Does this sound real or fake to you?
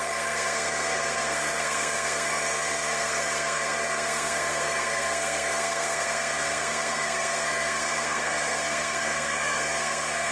fake